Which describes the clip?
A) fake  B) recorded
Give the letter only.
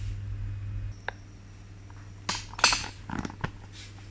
B